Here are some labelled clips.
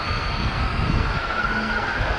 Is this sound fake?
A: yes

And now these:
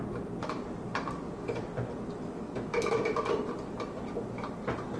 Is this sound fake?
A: no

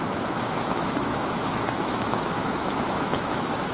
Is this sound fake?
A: yes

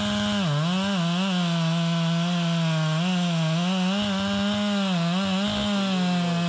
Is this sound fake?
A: no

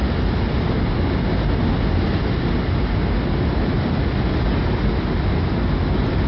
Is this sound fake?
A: no